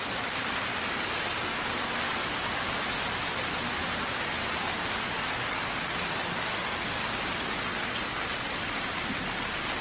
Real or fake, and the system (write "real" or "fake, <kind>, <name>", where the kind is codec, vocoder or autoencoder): real